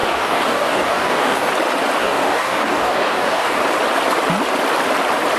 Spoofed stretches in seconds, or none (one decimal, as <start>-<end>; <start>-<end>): 0.0-1.5; 2.0-3.6